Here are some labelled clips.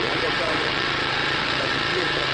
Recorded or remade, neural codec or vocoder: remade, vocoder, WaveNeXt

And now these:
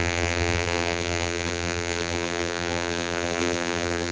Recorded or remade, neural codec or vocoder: remade, vocoder, BigVGAN v2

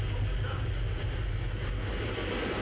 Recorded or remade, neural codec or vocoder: recorded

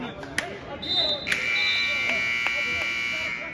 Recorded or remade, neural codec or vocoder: recorded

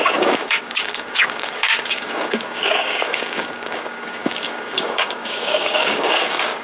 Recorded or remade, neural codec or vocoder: remade, codec, DAC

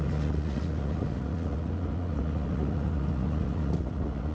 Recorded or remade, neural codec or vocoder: remade, vocoder, Vocos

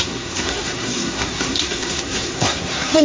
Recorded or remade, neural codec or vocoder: remade, codec, SNAC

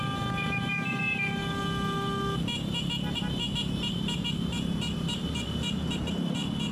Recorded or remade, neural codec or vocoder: recorded